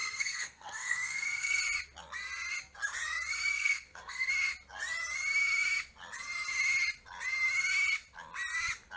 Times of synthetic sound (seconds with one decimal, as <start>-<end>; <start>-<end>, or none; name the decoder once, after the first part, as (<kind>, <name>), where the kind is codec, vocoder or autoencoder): 0.0-1.6 (codec, SNAC); 3.5-4.3